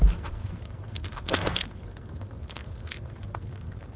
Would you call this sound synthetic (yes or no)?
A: yes